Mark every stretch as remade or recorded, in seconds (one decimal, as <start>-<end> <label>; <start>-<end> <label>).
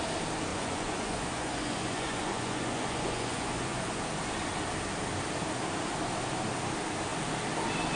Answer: 0.0-0.5 recorded; 0.5-4.0 remade; 4.0-8.0 recorded